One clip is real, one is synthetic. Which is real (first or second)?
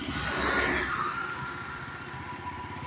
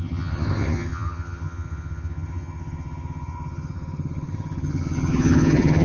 first